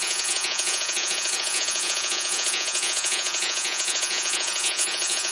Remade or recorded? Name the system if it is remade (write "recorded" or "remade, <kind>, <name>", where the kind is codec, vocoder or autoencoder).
remade, vocoder, Vocos